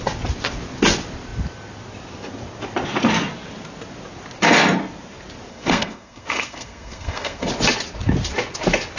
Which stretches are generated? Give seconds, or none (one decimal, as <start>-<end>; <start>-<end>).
5.5-7.5